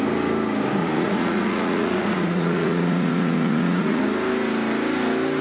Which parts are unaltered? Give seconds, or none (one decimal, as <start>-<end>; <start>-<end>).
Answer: 0.0-0.8; 4.0-5.4